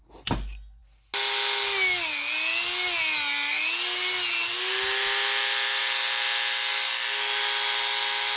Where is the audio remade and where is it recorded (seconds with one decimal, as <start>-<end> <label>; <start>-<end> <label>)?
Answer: 0.0-8.4 recorded